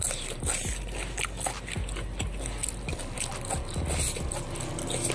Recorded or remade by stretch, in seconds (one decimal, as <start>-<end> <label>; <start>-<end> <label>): 0.0-2.6 recorded; 2.6-3.3 remade; 3.3-5.1 recorded